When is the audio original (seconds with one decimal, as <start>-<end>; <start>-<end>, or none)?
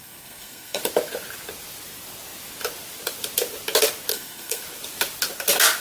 0.8-4.1; 4.6-5.8